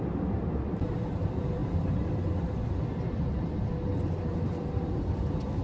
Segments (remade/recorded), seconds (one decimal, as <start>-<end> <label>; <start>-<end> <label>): 0.0-5.6 recorded